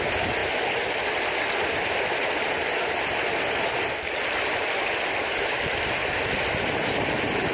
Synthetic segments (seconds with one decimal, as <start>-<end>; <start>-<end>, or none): none